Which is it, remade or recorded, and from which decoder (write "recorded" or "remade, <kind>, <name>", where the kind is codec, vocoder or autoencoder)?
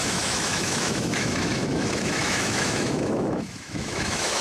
remade, autoencoder, DAC-VAE